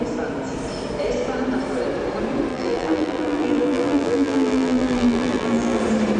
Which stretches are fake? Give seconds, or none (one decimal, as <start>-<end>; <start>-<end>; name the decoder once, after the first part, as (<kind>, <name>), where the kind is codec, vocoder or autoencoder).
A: 2.5-5.8 (vocoder, BigVGAN v2)